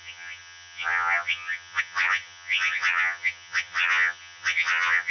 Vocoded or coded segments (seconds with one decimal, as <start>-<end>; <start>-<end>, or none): 0.0-5.1